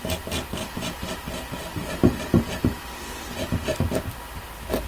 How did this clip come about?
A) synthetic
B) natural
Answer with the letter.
B